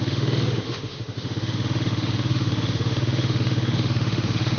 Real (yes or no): no